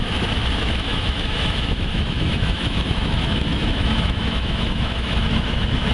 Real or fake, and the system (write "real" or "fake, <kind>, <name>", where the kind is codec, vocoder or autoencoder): fake, autoencoder, DAC-VAE